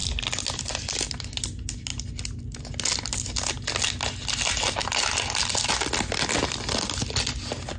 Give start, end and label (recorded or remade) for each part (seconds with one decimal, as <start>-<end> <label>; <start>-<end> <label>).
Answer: 0.0-7.8 recorded